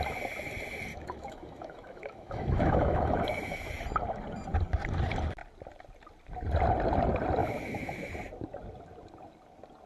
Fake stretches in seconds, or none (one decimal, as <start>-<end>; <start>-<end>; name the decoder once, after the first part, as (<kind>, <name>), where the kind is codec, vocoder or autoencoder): 0.9-3.7 (autoencoder, DAC-VAE); 7.4-8.1